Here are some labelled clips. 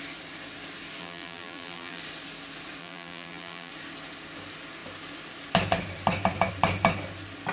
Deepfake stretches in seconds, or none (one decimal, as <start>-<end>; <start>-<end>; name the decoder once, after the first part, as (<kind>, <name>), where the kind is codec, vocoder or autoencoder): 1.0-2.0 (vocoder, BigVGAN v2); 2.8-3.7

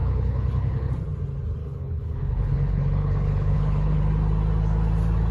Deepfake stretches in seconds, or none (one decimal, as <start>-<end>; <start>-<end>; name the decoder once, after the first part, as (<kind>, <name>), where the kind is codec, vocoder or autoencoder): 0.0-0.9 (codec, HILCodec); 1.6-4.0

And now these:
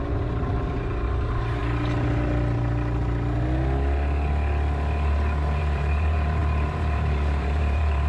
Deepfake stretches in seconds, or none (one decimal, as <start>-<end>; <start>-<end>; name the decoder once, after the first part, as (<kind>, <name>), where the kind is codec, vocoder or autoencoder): 0.0-1.6 (vocoder, BigVGAN v2); 5.6-8.1

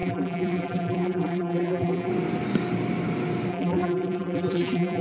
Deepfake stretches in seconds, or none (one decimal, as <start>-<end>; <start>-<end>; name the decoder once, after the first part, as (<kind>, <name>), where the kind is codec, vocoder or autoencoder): 0.0-2.1 (vocoder, BigVGAN v2); 3.5-5.0

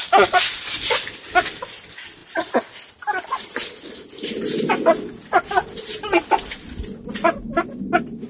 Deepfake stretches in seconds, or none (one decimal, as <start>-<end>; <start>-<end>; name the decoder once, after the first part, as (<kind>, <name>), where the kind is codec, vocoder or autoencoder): none

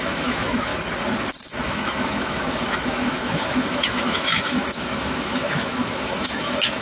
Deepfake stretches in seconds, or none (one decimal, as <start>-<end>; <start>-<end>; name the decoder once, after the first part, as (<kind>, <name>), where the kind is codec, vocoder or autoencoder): 0.0-0.7 (autoencoder, DAC-VAE); 1.2-6.8

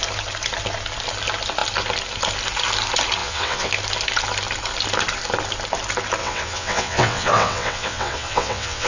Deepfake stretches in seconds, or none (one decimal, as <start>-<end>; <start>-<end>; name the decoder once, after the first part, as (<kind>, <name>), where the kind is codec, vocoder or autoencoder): 3.2-3.7 (vocoder, WaveNeXt); 6.2-8.9

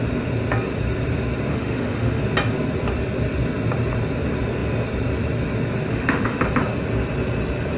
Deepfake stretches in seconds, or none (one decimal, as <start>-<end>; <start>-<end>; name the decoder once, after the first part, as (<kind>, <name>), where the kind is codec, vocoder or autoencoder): 1.5-2.2 (autoencoder, DAC-VAE); 5.9-6.4